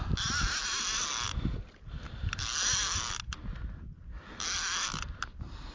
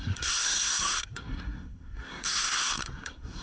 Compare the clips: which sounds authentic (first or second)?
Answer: first